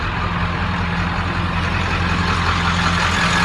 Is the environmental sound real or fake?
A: real